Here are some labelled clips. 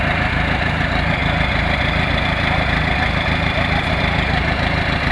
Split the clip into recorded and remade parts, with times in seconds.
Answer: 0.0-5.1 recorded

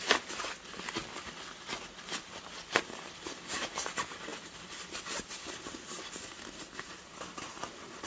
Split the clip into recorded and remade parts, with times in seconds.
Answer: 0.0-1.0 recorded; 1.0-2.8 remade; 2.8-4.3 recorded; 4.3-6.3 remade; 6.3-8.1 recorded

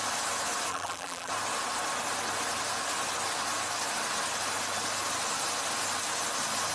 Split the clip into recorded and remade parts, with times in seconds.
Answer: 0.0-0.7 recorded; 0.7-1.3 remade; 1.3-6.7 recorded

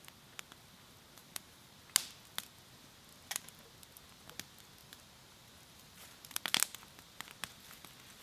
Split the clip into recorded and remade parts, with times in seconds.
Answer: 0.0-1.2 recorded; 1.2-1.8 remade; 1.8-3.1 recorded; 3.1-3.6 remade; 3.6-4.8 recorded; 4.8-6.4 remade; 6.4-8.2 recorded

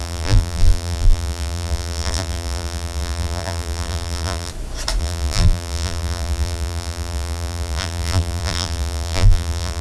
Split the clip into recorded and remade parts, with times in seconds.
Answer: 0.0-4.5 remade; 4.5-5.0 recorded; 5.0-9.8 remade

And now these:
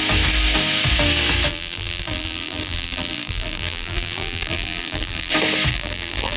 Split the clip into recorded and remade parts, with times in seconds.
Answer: 0.0-1.5 recorded; 1.5-5.3 remade; 5.3-5.7 recorded; 5.7-6.4 remade